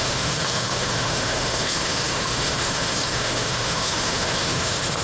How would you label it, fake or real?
fake